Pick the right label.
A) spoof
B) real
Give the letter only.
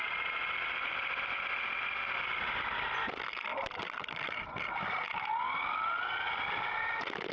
B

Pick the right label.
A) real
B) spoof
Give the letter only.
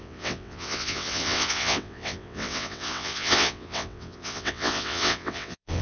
B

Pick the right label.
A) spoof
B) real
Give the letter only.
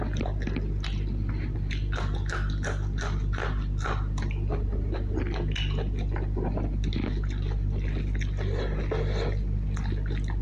B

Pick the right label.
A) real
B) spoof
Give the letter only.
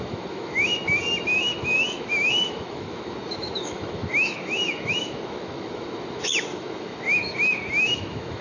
B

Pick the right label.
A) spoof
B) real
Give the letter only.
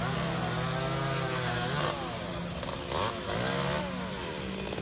B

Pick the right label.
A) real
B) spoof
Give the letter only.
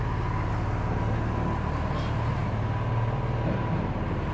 A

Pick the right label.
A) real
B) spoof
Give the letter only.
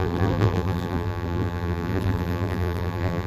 B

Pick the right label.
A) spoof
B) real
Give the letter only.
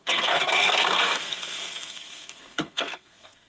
A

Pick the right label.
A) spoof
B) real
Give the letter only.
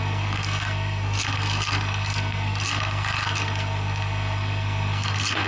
A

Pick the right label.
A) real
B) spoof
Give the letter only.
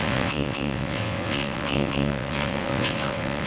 B